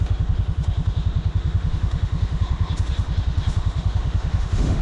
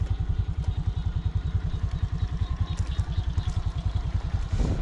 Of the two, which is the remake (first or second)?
first